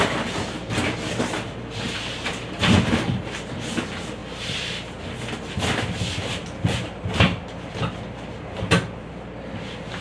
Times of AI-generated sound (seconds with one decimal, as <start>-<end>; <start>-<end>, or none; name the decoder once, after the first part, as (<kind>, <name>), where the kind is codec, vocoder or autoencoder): none